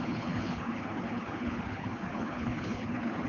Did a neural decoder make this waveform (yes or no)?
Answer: yes